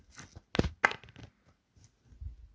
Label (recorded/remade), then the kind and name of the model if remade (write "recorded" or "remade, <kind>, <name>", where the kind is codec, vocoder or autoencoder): recorded